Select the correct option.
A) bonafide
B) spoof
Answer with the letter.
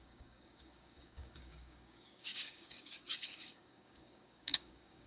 B